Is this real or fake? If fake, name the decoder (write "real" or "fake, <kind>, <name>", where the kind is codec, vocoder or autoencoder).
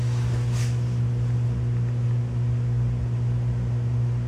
real